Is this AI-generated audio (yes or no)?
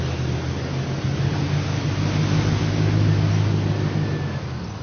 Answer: no